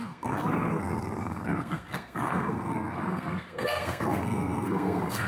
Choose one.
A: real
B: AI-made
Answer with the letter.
B